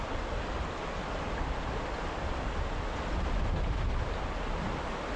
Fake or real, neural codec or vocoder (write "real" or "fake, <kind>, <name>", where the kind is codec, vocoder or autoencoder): real